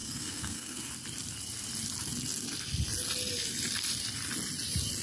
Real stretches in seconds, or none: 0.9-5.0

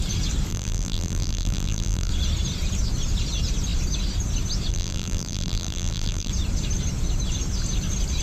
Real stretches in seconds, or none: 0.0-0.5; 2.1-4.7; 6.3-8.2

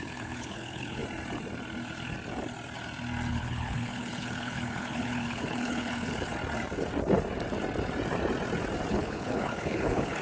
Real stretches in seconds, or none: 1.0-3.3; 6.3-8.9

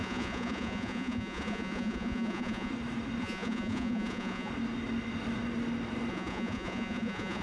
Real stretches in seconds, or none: 2.7-3.2; 4.5-6.1

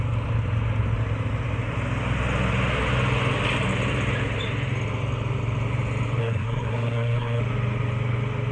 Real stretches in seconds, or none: 0.0-6.2; 7.4-8.5

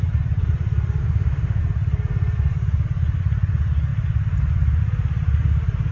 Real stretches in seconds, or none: 0.0-1.0; 1.6-5.9

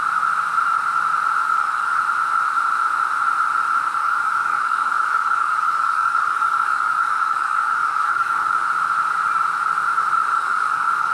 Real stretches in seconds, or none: 0.0-1.4; 2.0-4.0; 8.7-10.3

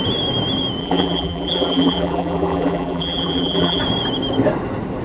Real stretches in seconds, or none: 0.0-0.8; 3.8-5.0